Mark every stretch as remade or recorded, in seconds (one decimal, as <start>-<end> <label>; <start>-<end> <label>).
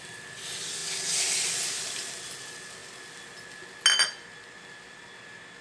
0.0-5.6 recorded